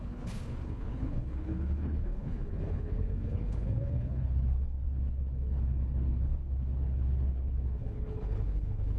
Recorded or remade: remade